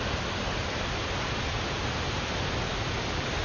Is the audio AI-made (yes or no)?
no